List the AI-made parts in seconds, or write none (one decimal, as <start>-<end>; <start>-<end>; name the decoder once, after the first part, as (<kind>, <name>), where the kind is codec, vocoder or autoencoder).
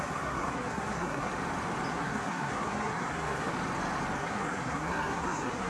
0.0-1.3 (codec, SNAC); 1.9-3.5; 4.2-5.7